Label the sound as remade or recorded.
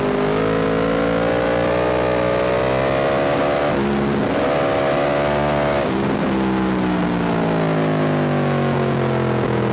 recorded